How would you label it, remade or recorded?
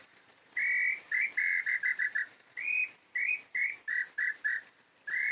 recorded